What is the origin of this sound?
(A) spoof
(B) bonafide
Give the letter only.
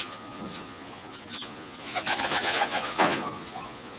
A